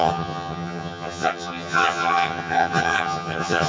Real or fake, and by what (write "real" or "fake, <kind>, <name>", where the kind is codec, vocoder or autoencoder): fake, vocoder, HiFi-GAN